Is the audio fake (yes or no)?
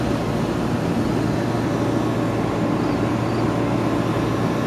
no